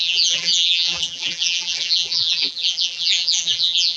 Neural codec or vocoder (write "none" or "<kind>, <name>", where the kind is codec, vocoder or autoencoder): vocoder, BigVGAN v2